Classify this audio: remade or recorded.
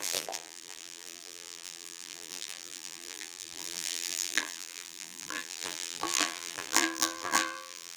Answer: remade